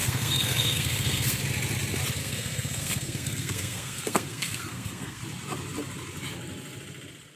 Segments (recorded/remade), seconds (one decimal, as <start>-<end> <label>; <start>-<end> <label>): 0.0-1.4 remade; 1.4-2.2 recorded; 2.2-5.2 remade; 5.2-7.4 recorded